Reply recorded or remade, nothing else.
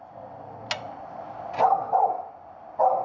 recorded